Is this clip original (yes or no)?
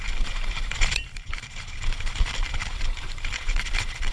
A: no